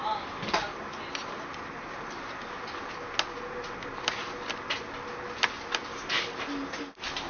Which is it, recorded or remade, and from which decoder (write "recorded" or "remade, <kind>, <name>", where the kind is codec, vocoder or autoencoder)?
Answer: recorded